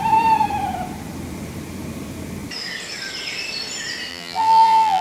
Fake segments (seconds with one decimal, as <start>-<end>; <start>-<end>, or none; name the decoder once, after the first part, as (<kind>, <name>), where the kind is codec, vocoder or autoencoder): 4.1-5.0 (vocoder, BigVGAN v2)